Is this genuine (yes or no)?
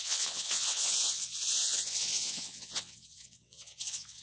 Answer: no